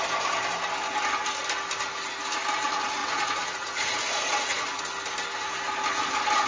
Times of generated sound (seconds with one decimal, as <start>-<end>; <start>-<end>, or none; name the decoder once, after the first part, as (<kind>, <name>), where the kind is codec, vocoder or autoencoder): 3.0-4.8 (vocoder, Vocos)